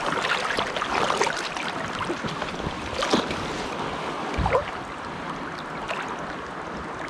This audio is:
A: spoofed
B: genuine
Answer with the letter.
B